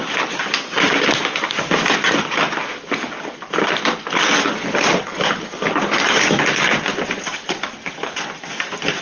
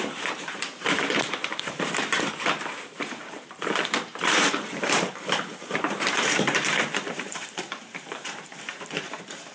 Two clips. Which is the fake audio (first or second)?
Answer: second